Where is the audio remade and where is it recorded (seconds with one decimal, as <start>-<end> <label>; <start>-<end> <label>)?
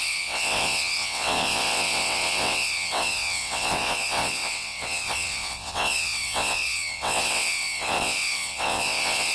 0.0-9.3 remade